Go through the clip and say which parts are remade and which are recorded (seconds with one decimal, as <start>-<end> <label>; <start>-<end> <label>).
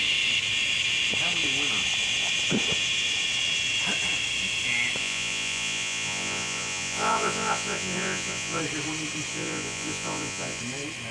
0.0-5.0 recorded; 5.0-8.6 remade; 8.6-9.3 recorded; 9.3-10.6 remade; 10.6-11.1 recorded